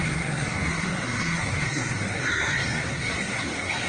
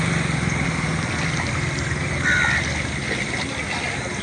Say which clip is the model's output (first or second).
first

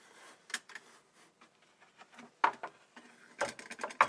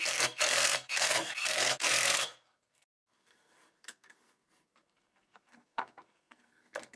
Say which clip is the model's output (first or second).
second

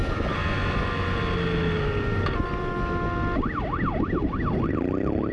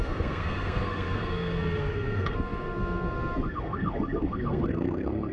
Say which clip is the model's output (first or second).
second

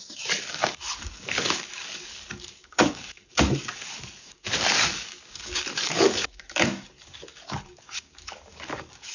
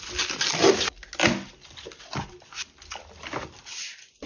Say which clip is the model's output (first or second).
first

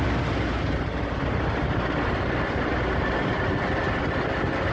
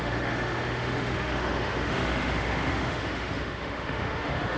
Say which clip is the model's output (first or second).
second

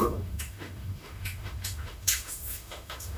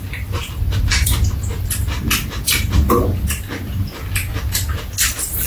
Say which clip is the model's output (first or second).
first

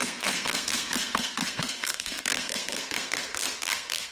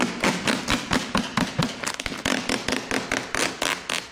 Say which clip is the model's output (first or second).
first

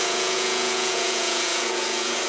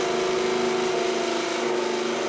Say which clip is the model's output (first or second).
first